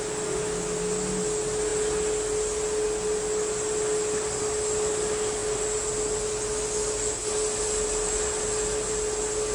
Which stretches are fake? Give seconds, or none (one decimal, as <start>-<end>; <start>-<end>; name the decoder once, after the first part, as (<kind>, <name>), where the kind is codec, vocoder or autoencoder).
none